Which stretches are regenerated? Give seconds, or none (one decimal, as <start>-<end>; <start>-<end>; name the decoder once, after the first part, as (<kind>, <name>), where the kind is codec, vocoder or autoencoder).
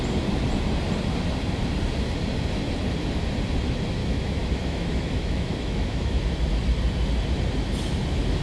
4.0-6.2 (autoencoder, DAC-VAE)